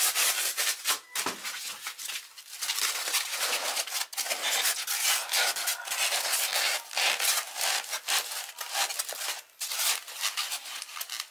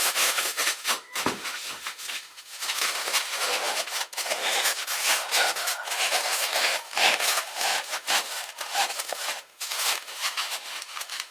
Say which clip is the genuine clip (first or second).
first